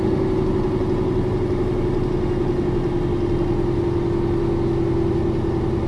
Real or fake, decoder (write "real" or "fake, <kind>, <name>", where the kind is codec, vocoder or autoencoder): real